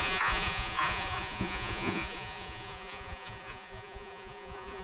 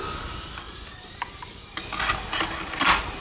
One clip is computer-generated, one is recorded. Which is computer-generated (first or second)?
first